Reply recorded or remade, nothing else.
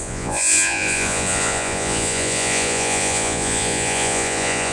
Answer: remade